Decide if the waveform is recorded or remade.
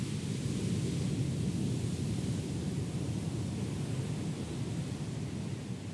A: recorded